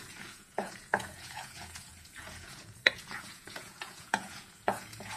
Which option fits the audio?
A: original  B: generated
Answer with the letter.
B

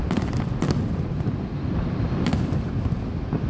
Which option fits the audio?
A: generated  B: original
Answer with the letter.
B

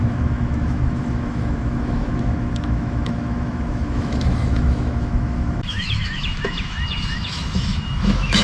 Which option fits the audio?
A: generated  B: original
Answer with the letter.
A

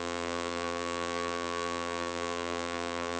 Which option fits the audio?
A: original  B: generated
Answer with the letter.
B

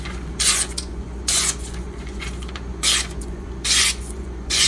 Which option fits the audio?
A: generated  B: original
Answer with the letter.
A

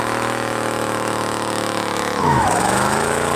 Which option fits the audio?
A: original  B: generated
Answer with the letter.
B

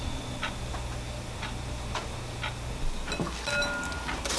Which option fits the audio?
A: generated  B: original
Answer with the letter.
B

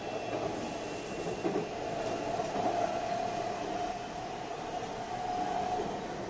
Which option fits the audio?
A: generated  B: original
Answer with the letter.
B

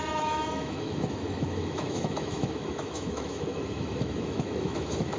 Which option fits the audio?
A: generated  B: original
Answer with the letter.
A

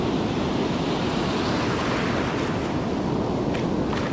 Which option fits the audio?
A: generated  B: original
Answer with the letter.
B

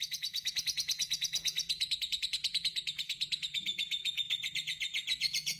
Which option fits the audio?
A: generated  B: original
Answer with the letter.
A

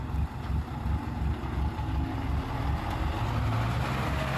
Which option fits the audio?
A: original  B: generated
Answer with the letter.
A